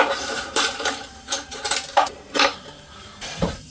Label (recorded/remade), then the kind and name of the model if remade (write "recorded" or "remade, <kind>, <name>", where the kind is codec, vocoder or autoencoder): remade, vocoder, BigVGAN v2